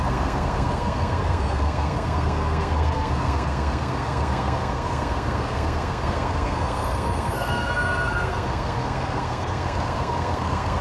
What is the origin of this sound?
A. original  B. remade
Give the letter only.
B